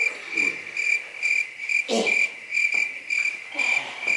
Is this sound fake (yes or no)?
no